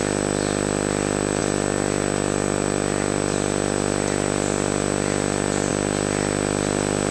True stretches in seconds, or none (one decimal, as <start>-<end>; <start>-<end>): 0.0-7.1